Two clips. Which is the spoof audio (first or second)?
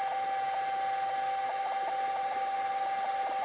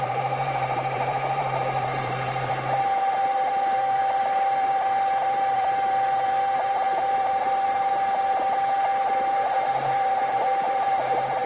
second